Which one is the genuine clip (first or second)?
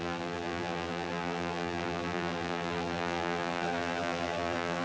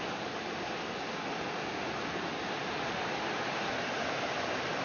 second